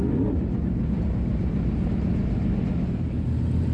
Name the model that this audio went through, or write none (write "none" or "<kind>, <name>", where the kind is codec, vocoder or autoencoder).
none